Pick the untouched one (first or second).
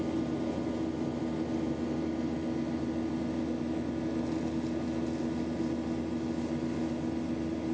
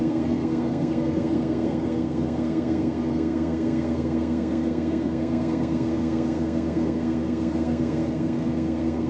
first